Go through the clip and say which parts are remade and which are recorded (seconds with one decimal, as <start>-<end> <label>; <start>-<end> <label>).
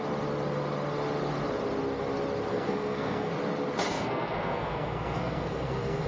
0.0-2.5 recorded; 2.5-3.3 remade; 3.3-3.9 recorded; 3.9-6.1 remade